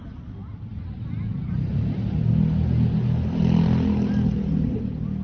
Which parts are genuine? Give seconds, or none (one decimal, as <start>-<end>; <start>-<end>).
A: 0.0-5.2

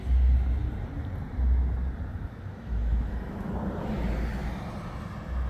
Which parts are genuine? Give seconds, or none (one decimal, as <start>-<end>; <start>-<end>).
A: 0.0-2.1; 3.5-5.5